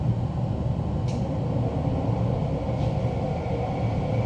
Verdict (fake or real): real